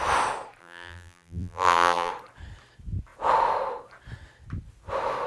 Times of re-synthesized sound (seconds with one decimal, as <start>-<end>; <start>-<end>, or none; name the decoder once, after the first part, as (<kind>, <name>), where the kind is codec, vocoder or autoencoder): 0.6-2.1 (vocoder, BigVGAN v2)